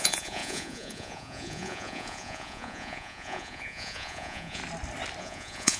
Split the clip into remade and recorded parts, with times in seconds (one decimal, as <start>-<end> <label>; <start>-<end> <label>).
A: 0.0-4.6 remade; 4.6-5.2 recorded; 5.2-5.8 remade